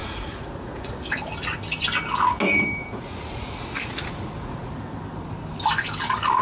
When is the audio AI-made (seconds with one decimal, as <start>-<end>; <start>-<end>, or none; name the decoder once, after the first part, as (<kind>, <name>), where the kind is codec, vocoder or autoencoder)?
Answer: 0.0-0.9 (vocoder, Vocos); 2.8-4.7